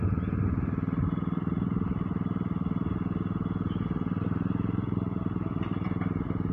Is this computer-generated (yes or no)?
no